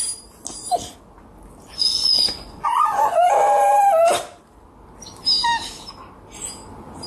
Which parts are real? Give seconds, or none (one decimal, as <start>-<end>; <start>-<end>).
0.0-1.7; 3.2-7.1